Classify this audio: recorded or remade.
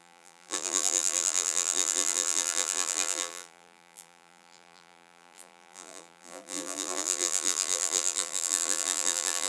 remade